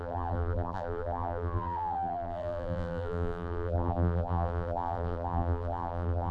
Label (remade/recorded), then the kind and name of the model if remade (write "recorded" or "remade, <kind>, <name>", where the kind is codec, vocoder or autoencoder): remade, vocoder, BigVGAN v2